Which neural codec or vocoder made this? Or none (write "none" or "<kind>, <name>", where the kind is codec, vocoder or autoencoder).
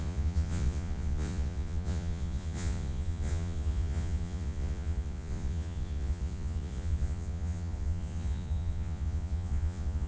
vocoder, Vocos